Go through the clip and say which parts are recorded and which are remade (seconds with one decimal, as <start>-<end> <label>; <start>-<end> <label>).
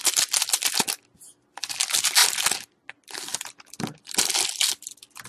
0.0-5.3 recorded